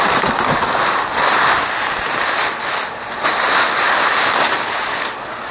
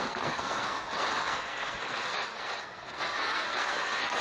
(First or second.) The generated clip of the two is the second